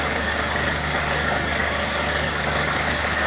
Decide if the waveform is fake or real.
fake